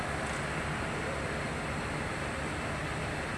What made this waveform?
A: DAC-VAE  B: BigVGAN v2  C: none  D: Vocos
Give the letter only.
C